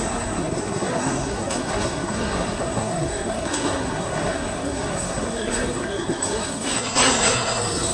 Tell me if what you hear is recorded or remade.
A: remade